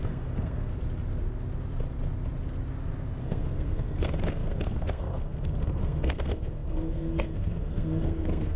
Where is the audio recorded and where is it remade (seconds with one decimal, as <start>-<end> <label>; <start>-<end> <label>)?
0.0-0.7 remade; 0.7-3.2 recorded; 3.2-8.6 remade